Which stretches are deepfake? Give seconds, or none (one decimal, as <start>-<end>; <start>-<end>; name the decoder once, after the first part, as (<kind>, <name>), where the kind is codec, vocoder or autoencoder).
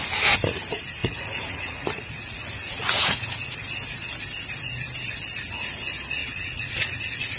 1.0-3.6 (vocoder, Vocos); 6.2-7.0